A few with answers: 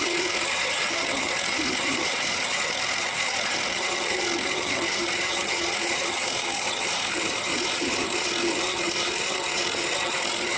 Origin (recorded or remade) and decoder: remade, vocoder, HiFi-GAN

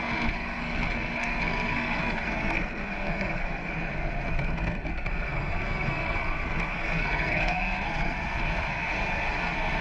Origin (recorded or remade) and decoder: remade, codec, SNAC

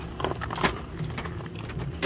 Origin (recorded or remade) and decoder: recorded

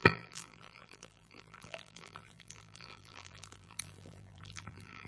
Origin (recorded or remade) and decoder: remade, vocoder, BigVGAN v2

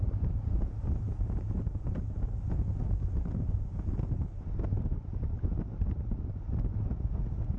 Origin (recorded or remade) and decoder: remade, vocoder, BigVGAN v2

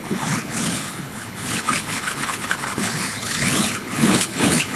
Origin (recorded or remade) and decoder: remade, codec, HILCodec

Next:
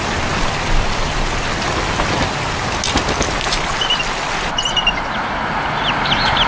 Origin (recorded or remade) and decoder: recorded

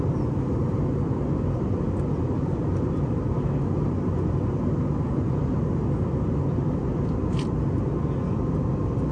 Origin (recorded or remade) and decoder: recorded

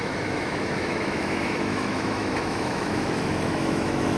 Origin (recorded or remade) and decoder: remade, autoencoder, DAC-VAE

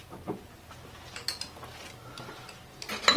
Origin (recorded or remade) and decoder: recorded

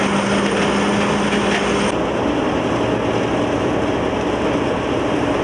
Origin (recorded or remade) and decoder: recorded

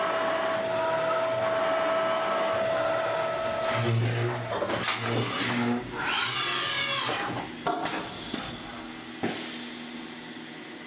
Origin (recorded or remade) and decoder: recorded